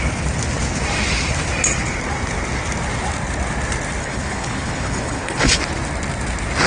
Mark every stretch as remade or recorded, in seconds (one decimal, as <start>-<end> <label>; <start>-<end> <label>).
0.0-4.0 recorded; 4.0-5.6 remade; 5.6-6.7 recorded